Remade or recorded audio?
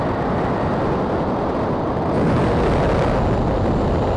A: recorded